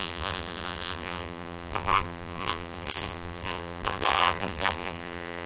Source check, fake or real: fake